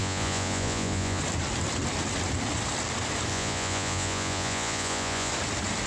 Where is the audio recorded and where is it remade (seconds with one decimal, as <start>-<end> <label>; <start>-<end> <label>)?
0.0-1.2 remade; 1.2-3.3 recorded; 3.3-5.3 remade; 5.3-5.9 recorded